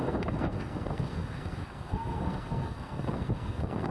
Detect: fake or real fake